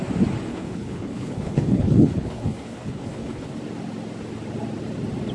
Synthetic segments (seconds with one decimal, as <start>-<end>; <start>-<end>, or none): 0.5-3.6